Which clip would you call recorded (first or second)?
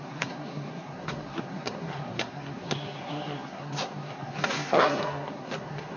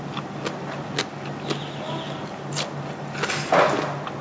second